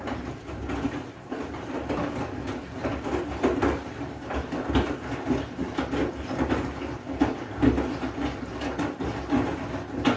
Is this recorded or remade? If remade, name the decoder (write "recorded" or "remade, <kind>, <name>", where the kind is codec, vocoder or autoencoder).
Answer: recorded